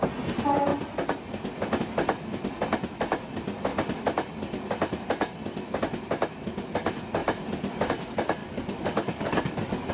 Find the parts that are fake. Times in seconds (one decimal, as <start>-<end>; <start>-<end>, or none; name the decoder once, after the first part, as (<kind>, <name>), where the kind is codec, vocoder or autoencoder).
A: 8.4-9.9 (codec, DAC)